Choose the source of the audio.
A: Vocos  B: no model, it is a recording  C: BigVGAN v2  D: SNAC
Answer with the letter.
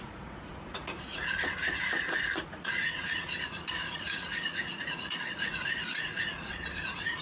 A